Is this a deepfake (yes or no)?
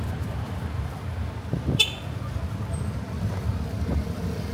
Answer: no